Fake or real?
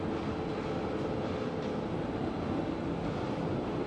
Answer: real